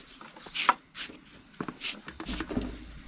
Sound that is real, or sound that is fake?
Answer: real